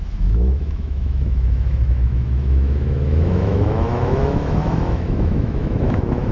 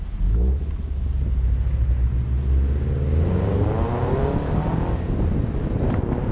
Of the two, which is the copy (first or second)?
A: first